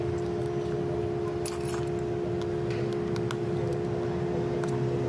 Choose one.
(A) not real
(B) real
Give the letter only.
B